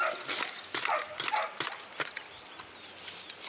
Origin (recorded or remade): recorded